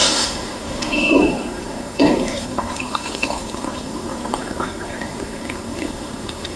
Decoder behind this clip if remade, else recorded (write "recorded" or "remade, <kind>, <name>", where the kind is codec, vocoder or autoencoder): remade, codec, SNAC